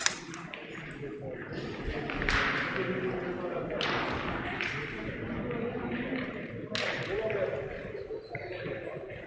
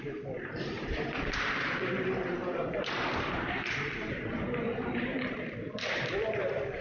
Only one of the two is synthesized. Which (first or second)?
second